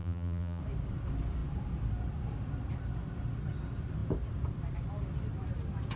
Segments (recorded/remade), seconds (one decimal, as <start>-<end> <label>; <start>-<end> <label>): 0.0-0.6 remade; 0.6-6.0 recorded